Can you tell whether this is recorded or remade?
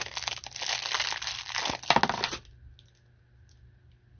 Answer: recorded